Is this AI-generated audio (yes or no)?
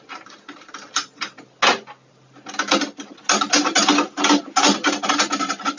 no